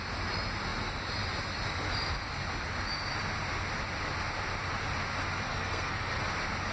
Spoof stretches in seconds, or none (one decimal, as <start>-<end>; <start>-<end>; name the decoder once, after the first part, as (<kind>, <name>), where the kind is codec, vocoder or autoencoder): 5.5-6.2 (codec, SNAC)